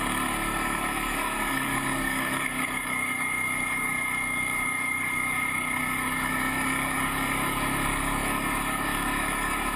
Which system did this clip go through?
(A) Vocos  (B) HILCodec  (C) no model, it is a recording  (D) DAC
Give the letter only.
D